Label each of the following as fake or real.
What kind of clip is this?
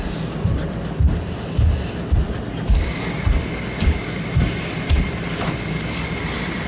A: real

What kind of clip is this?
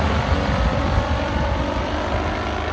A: real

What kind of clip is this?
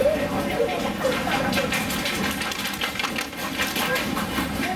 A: real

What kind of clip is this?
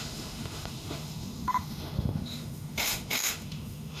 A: fake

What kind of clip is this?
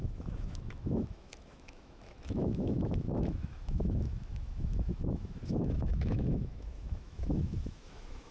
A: fake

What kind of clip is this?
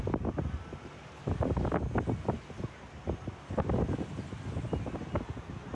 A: real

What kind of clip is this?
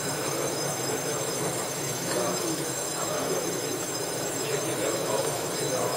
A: fake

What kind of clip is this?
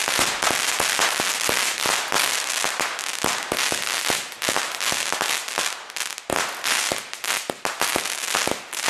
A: real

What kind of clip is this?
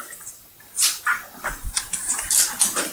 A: real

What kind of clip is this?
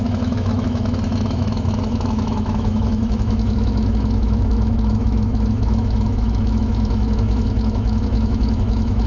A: fake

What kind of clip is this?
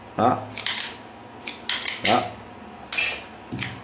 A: real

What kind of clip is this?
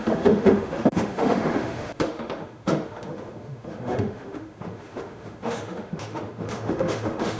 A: fake